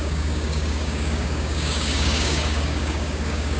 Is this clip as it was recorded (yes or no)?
no